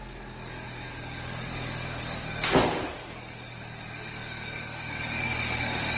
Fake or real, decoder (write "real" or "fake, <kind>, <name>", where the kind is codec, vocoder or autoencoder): fake, codec, DAC